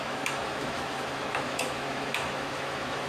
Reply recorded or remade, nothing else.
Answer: remade